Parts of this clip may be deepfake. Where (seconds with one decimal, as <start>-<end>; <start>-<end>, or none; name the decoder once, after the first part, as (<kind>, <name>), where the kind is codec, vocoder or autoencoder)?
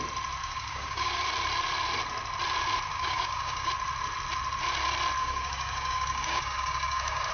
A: 0.4-1.2 (codec, DAC); 2.9-3.7; 5.2-7.3